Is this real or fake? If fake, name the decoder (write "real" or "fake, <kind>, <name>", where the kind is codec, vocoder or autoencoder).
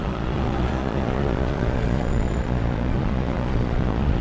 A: fake, vocoder, Vocos